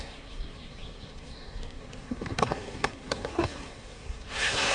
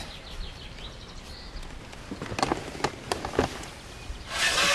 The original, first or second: second